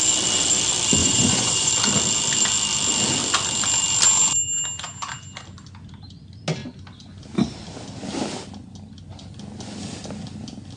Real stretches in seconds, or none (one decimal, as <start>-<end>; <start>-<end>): 0.0-1.0; 1.7-10.8